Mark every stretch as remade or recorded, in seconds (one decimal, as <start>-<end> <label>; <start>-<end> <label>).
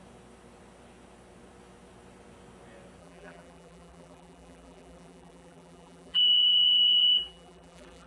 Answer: 0.0-3.0 recorded; 3.0-8.1 remade